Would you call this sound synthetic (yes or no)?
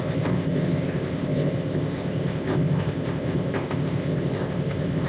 yes